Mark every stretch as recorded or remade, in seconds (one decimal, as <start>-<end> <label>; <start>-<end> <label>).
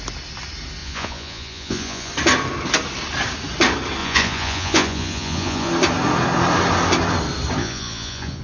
0.0-0.8 recorded; 0.8-2.1 remade; 2.1-4.0 recorded; 4.0-5.7 remade; 5.7-7.6 recorded; 7.6-8.4 remade